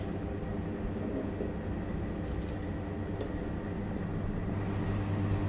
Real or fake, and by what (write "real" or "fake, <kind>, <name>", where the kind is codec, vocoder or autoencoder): real